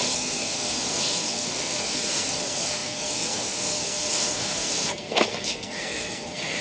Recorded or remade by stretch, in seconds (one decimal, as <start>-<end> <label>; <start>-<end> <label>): 0.0-6.6 remade